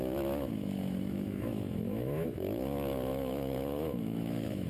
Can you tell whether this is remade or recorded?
remade